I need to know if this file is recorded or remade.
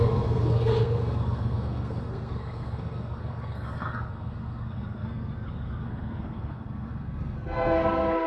remade